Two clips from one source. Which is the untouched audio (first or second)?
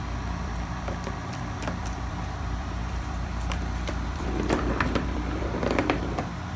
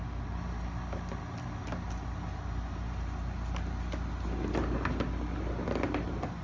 second